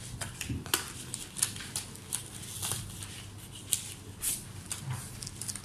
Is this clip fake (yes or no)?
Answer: no